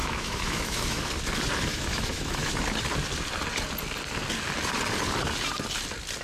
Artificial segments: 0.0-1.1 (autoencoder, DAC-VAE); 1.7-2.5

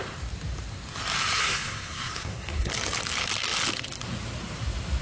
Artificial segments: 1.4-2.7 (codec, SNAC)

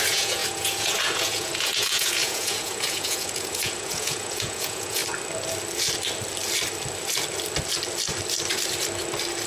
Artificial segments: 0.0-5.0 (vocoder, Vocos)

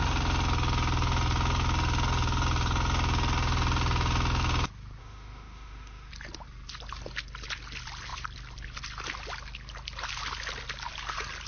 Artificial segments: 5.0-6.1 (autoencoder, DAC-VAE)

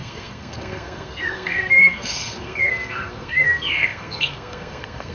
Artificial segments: 0.0-5.1 (codec, SNAC)

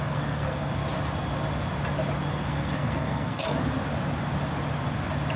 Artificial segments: 0.0-0.8 (codec, SNAC); 2.3-3.6

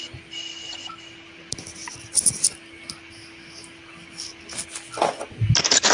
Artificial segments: none

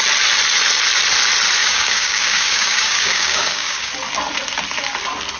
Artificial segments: 1.6-3.9 (codec, DAC)